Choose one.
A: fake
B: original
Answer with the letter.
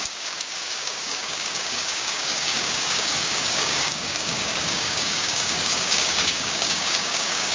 A